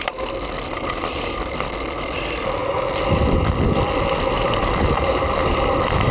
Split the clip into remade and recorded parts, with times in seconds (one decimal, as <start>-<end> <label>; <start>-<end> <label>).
0.0-0.6 recorded; 0.6-6.1 remade